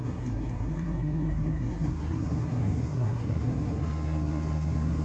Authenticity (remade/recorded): remade